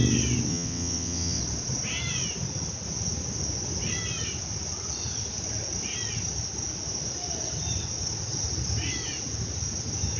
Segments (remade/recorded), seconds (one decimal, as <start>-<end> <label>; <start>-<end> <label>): 0.0-0.5 recorded; 0.5-1.4 remade; 1.4-10.2 recorded